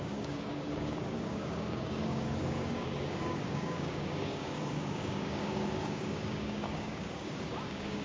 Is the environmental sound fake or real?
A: fake